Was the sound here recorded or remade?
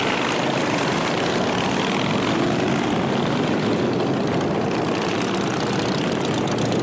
recorded